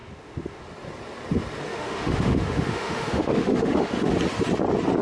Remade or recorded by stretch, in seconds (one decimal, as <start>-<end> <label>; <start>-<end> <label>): 0.0-0.6 remade; 0.6-1.7 recorded; 1.7-4.1 remade; 4.1-5.0 recorded